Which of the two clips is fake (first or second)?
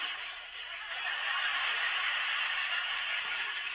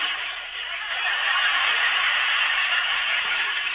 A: second